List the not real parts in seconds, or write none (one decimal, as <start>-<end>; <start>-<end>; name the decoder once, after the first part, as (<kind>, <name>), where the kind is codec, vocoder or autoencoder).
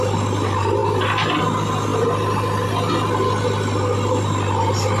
none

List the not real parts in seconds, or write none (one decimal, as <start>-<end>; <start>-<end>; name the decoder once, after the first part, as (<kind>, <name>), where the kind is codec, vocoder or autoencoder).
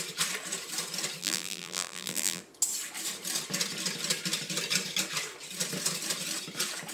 1.2-2.4 (vocoder, BigVGAN v2)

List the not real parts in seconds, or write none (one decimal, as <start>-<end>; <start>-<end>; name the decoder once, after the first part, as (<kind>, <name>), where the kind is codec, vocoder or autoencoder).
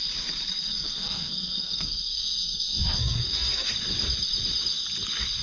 0.5-3.7 (codec, SNAC)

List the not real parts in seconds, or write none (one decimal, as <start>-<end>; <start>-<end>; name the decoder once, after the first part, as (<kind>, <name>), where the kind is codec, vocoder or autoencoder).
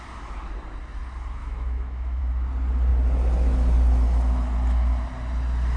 1.4-2.2 (autoencoder, DAC-VAE)